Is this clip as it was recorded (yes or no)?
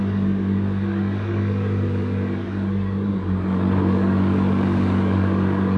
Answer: no